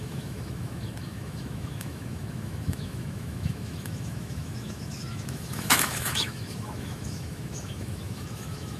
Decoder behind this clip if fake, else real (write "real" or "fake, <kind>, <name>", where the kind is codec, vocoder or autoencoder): fake, autoencoder, DAC-VAE